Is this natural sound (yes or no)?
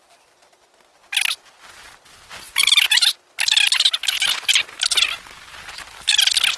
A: yes